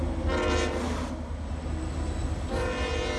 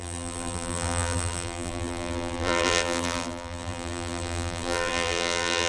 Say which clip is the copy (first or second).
second